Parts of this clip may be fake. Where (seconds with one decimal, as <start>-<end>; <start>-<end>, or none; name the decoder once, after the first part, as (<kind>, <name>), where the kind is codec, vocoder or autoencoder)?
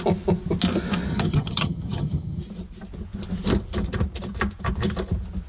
1.1-2.4 (vocoder, HiFi-GAN)